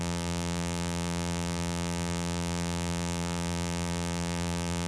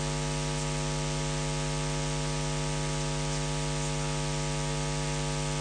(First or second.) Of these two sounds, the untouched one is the second